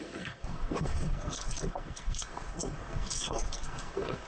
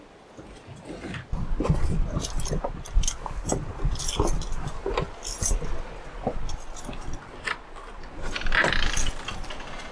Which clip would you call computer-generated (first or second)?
first